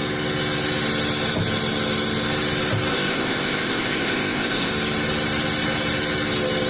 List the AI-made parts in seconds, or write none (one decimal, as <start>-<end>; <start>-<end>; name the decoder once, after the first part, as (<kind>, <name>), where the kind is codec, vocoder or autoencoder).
2.9-4.7 (codec, ZipCodec)